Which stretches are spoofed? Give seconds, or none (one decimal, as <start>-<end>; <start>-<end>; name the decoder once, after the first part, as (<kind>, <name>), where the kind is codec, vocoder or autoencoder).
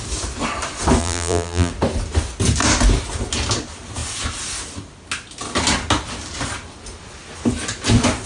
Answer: 1.0-1.7 (vocoder, BigVGAN v2)